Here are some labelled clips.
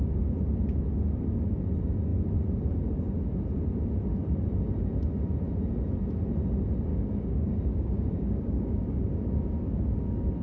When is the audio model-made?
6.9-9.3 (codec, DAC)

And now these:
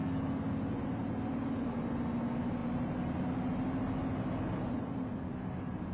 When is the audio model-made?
2.6-3.3 (vocoder, BigVGAN v2)

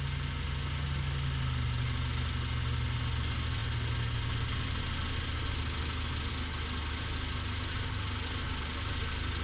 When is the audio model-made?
none

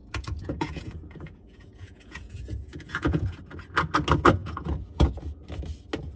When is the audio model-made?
0.0-3.4 (vocoder, Vocos); 4.4-5.1

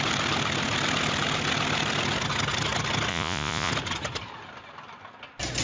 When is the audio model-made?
3.1-3.7 (vocoder, Vocos)